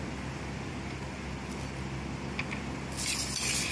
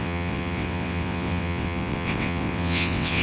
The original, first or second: first